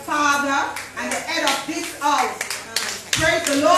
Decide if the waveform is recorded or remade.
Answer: recorded